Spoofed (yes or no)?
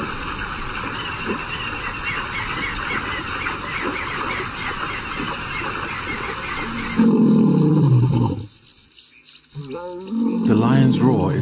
no